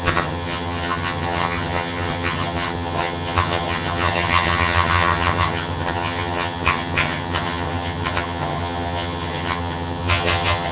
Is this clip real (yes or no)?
no